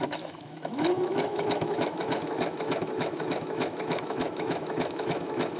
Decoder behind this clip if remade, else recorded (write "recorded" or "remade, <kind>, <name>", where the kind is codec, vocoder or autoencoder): remade, autoencoder, DAC-VAE